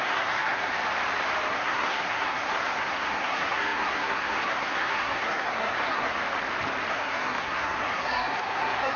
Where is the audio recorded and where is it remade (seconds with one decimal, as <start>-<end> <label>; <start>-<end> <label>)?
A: 0.0-0.7 remade; 0.7-1.5 recorded; 1.5-6.2 remade; 6.2-6.9 recorded; 6.9-9.0 remade